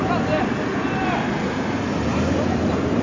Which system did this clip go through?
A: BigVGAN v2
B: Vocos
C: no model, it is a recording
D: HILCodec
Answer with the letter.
C